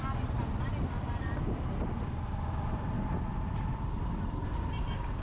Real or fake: real